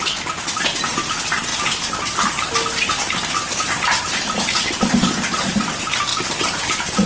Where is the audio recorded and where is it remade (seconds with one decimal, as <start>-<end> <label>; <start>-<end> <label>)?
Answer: 0.0-7.1 recorded